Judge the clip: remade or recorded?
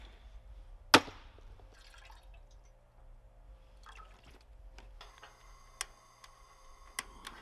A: recorded